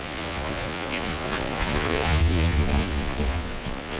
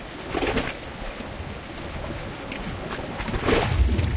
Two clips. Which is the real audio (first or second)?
second